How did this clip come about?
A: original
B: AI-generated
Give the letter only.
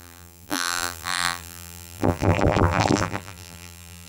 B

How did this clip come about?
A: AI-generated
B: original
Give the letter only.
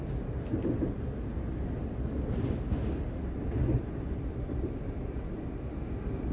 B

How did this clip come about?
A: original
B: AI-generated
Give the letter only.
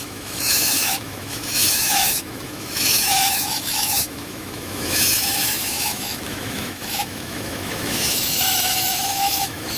B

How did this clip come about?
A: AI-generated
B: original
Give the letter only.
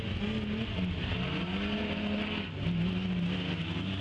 B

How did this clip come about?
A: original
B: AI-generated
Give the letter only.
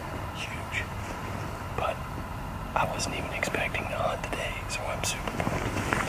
A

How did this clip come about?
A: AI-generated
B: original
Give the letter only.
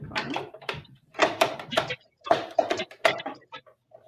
A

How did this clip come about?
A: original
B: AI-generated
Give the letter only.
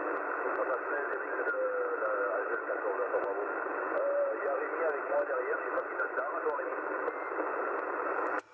A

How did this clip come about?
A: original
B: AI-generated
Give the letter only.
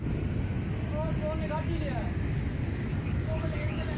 A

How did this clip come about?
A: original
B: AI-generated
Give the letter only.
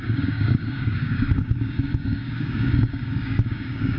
B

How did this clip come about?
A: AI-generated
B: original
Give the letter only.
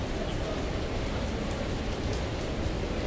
B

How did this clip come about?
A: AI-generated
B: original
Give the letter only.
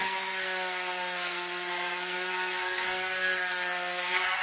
A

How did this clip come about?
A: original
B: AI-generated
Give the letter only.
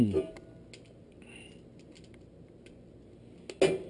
A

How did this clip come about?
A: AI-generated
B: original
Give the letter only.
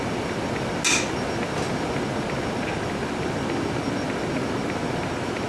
B